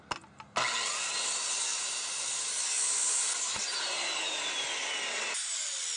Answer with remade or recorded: recorded